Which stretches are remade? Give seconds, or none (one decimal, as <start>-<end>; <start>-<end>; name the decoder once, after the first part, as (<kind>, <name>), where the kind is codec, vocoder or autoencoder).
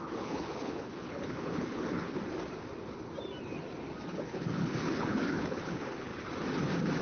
0.0-2.2 (codec, HILCodec); 4.1-6.1